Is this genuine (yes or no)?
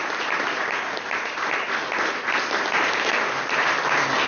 yes